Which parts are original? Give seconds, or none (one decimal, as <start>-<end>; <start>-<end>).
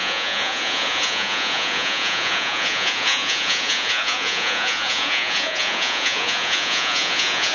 none